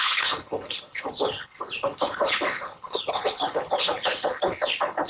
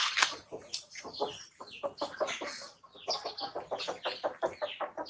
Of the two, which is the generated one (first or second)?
first